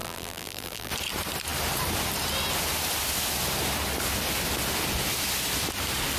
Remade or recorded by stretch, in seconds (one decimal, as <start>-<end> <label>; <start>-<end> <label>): 0.0-0.9 remade; 0.9-6.2 recorded